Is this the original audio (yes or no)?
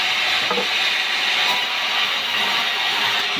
yes